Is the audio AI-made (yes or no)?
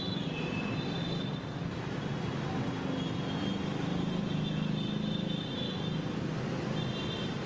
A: no